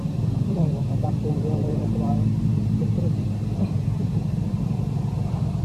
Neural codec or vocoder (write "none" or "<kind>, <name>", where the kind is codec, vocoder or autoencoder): vocoder, BigVGAN v2